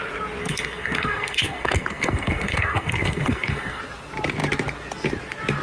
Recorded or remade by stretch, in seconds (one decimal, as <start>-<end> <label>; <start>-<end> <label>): 0.0-0.4 recorded; 0.4-3.8 remade; 3.8-5.6 recorded